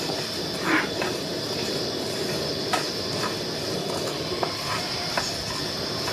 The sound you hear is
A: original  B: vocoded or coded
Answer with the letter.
A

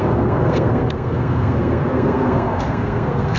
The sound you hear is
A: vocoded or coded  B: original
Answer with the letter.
A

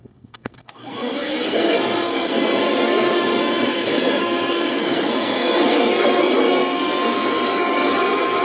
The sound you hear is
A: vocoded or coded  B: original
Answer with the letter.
A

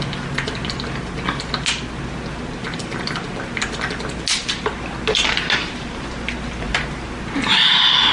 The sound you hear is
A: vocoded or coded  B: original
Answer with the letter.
B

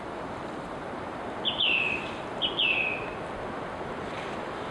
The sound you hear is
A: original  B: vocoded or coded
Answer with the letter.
A